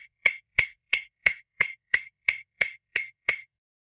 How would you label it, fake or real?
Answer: fake